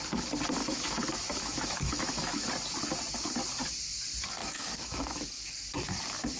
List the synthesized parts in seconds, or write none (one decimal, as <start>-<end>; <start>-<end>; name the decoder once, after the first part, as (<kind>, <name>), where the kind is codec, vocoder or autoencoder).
0.6-2.5 (autoencoder, DAC-VAE); 4.4-5.5